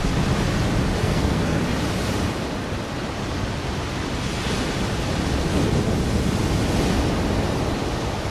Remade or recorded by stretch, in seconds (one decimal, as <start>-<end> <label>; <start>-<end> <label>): 0.0-1.0 recorded; 1.0-1.6 remade; 1.6-8.3 recorded